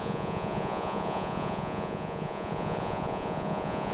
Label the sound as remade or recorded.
remade